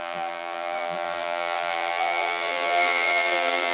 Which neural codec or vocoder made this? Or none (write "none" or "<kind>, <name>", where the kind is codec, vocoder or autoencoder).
vocoder, BigVGAN v2